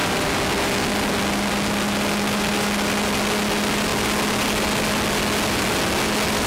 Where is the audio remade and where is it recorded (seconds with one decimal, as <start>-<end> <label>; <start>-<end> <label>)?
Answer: 0.0-6.5 recorded